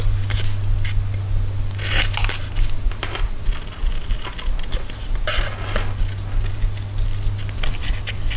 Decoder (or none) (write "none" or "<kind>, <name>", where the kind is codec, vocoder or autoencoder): none